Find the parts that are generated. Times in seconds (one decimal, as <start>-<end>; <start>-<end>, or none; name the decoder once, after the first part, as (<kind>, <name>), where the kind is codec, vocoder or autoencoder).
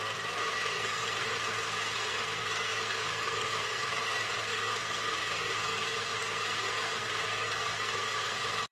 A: 0.0-8.7 (codec, SNAC)